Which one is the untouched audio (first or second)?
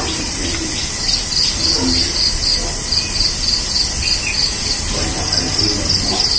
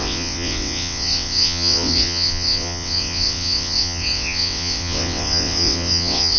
first